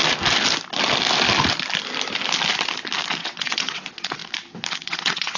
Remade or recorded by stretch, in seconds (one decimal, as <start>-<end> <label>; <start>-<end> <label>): 0.0-3.2 recorded; 3.2-4.2 remade; 4.2-4.7 recorded; 4.7-5.4 remade